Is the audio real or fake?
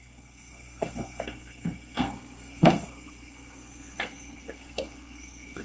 fake